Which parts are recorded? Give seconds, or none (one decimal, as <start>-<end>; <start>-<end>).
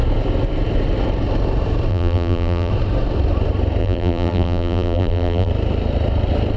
0.0-1.9; 2.7-3.8; 5.5-6.6